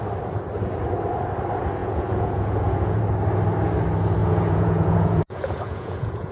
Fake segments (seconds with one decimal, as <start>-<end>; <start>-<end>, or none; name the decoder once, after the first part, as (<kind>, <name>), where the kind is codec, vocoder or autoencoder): 1.8-3.0 (vocoder, Vocos); 4.2-6.3

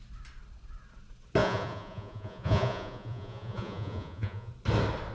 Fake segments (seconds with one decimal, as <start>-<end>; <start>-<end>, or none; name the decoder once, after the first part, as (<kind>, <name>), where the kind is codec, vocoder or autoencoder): 1.4-4.5 (vocoder, Vocos)

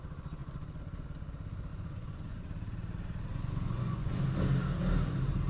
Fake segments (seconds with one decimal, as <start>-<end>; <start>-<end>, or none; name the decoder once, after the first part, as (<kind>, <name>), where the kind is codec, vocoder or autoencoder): 0.4-1.1 (vocoder, Vocos); 1.7-2.4; 3.3-4.2